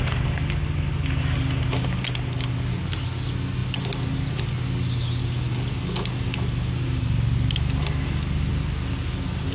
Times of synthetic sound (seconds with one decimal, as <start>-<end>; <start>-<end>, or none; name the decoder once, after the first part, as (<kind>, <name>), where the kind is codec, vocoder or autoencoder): none

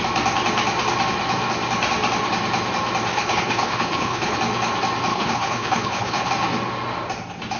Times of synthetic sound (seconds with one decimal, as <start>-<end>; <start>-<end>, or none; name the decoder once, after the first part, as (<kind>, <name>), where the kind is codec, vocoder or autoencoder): 3.1-4.4 (codec, HILCodec); 5.1-6.3